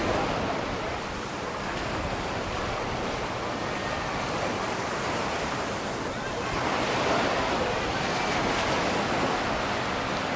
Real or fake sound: real